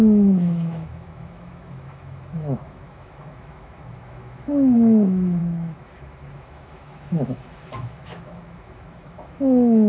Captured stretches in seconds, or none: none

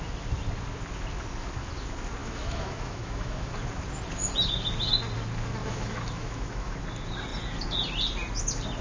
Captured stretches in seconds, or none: 0.0-2.2; 3.5-5.6; 6.8-8.8

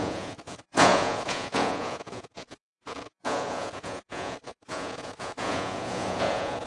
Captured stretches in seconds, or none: none

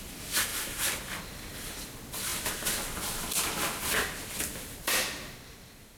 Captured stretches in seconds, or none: 0.0-6.0